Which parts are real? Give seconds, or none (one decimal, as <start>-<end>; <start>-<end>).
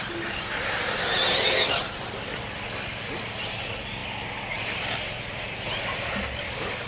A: 0.0-6.9